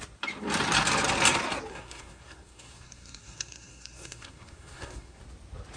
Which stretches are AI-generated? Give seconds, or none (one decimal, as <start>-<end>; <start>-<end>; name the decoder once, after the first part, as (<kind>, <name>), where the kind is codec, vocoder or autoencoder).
1.7-5.2 (codec, SNAC)

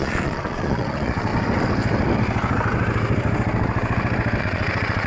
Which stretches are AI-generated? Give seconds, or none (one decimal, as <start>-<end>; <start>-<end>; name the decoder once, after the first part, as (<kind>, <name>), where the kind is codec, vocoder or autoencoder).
0.0-1.3 (vocoder, Vocos); 4.4-5.1

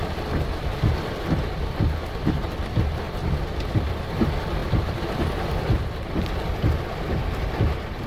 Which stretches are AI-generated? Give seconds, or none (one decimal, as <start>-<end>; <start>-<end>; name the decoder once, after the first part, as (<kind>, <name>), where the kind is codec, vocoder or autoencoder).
3.2-3.9 (vocoder, BigVGAN v2)